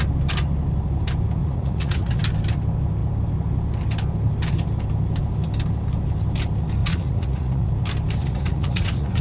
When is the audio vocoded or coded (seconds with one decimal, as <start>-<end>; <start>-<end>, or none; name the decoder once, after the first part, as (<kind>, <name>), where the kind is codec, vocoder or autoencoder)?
1.4-2.2 (vocoder, Vocos); 6.8-7.7; 8.2-9.2